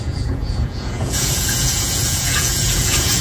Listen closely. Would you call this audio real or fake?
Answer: fake